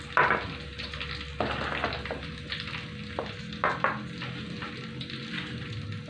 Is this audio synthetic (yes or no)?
no